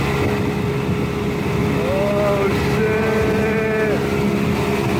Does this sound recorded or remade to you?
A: recorded